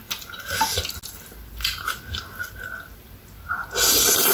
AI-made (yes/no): no